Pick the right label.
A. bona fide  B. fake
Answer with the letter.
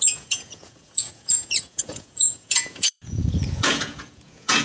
B